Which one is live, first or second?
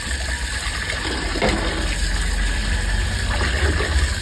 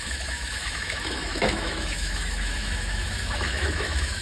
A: first